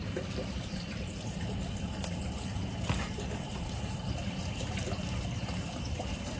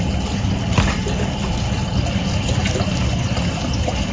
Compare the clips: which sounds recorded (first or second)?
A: second